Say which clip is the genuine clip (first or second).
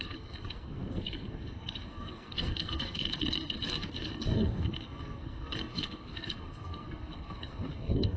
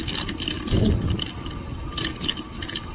second